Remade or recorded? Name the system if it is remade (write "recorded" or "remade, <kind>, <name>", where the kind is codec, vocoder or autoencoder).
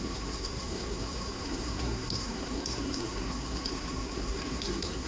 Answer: remade, codec, SNAC